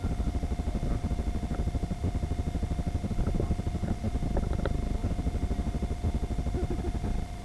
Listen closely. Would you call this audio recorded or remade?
recorded